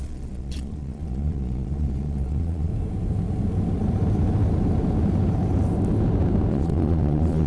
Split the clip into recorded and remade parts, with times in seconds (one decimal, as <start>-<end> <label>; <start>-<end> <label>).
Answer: 0.0-2.7 remade; 2.7-6.5 recorded; 6.5-7.5 remade